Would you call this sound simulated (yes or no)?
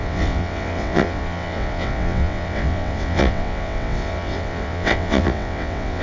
yes